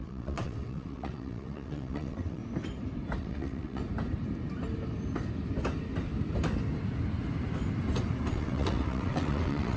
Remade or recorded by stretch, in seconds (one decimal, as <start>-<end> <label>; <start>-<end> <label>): 0.0-2.4 remade; 2.4-3.2 recorded; 3.2-3.8 remade; 3.8-8.3 recorded; 8.3-9.8 remade

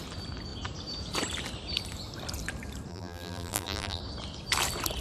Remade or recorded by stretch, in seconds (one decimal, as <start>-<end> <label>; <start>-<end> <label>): 0.0-2.9 recorded; 2.9-4.0 remade; 4.0-5.0 recorded

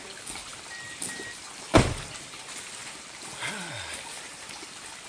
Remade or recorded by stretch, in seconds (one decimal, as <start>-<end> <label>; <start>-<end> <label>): 0.0-5.1 recorded

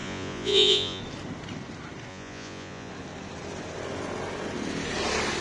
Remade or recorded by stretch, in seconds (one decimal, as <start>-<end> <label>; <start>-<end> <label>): 0.0-1.0 remade; 1.0-2.1 recorded; 2.1-2.9 remade; 2.9-5.4 recorded

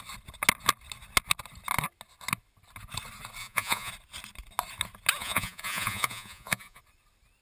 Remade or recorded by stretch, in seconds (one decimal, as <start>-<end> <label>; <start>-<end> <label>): 0.0-3.4 recorded; 3.4-3.9 remade; 3.9-5.2 recorded; 5.2-6.8 remade; 6.8-7.4 recorded

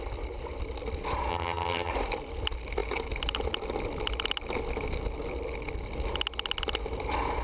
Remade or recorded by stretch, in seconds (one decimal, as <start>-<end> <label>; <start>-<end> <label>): 0.0-1.3 recorded; 1.3-1.9 remade; 1.9-7.4 recorded

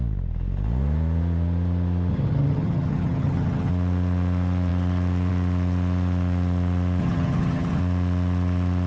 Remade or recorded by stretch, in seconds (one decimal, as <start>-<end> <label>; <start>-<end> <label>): 0.0-2.1 recorded; 2.1-3.7 remade; 3.7-7.0 recorded; 7.0-7.8 remade; 7.8-8.9 recorded